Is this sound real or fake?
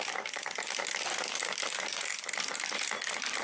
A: real